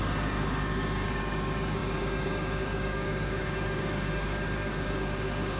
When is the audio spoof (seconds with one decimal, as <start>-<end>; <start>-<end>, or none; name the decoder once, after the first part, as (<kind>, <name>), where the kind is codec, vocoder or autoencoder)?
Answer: 0.0-5.6 (codec, DAC)